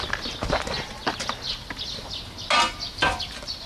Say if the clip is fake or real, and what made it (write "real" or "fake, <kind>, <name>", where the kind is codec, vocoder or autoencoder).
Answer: real